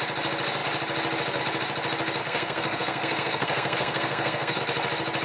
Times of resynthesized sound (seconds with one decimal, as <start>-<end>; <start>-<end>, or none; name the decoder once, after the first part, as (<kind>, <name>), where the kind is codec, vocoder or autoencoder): 2.2-4.6 (codec, SNAC)